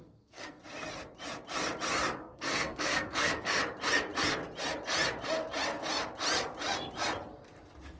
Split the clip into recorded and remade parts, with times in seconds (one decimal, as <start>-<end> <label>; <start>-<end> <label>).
0.0-0.6 remade; 0.6-2.2 recorded; 2.2-3.6 remade; 3.6-8.0 recorded